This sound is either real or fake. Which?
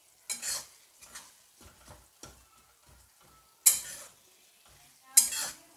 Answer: real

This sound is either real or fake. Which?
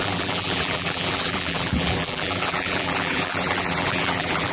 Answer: fake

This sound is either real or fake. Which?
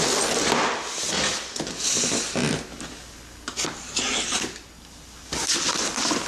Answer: real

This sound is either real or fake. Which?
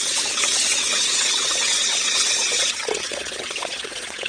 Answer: fake